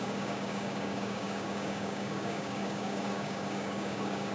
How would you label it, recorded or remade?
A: remade